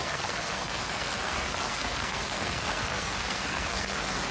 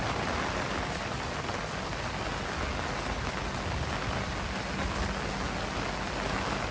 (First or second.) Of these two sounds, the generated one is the first